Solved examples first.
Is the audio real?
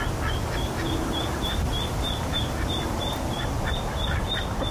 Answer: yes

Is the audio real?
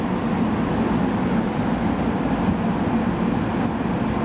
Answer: yes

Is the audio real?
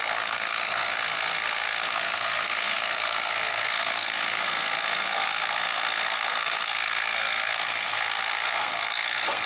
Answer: no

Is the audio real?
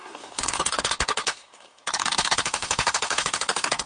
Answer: no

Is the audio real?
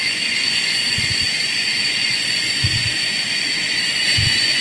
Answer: no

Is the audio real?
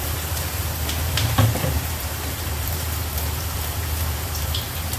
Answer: no